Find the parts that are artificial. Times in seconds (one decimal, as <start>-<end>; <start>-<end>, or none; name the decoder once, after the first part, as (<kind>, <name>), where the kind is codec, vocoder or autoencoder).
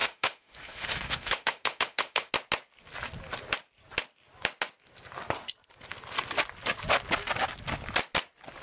0.0-2.3 (autoencoder, DAC-VAE)